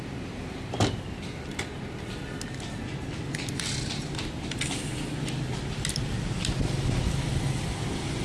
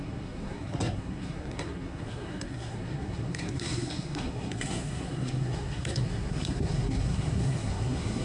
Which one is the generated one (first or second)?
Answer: second